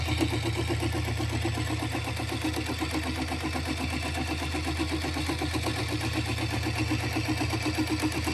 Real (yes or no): yes